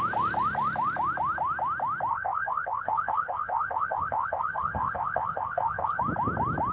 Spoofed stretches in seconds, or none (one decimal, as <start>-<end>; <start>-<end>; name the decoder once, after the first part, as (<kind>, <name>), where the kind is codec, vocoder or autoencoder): 2.1-6.0 (codec, ZipCodec)

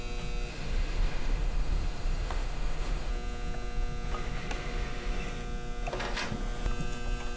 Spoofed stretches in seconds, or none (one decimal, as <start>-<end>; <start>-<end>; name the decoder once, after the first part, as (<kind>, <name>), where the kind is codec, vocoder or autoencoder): 0.5-3.1 (autoencoder, DAC-VAE)

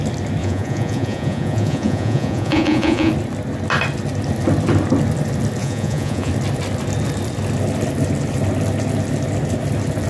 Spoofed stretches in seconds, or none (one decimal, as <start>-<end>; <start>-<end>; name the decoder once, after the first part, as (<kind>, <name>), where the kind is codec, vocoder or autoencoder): 0.4-3.1 (vocoder, Vocos); 5.6-6.3

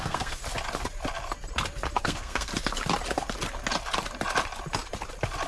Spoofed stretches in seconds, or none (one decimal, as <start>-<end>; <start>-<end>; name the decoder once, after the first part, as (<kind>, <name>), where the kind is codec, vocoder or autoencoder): 0.0-0.4 (codec, SNAC); 2.0-2.5

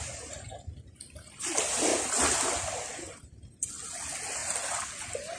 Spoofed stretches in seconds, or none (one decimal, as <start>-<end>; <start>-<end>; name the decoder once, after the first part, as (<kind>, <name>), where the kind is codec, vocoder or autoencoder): none